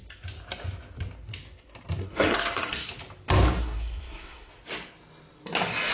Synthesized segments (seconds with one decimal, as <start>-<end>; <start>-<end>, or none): 2.0-2.9; 3.6-4.5